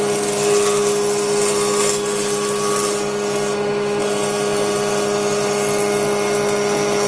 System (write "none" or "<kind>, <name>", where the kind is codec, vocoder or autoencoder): none